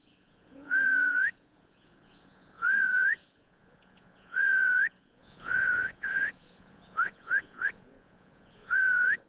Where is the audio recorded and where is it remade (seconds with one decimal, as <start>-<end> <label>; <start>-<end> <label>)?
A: 0.0-9.3 remade